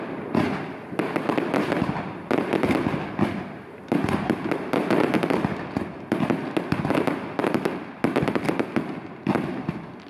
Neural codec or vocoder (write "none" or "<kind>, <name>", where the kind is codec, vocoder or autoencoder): none